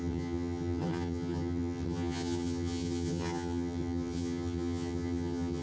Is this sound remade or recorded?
remade